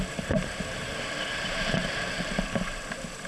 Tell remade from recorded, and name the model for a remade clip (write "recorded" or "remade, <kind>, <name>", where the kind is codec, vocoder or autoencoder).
remade, vocoder, BigVGAN v2